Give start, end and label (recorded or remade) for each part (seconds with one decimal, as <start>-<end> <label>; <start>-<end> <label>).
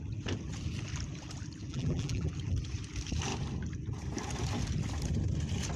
0.0-1.7 recorded; 1.7-2.3 remade; 2.3-5.8 recorded